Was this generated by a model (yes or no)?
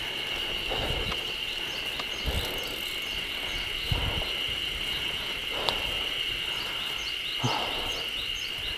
no